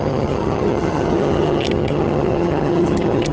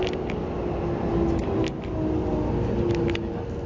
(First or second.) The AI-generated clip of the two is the first